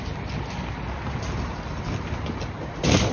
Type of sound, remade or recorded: recorded